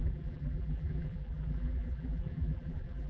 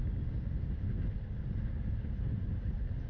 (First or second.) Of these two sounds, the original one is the second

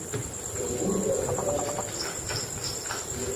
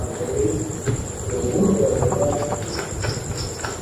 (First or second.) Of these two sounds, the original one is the second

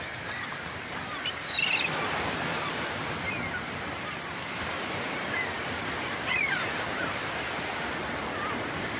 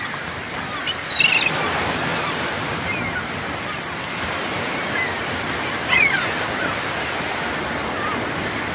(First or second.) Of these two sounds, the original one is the second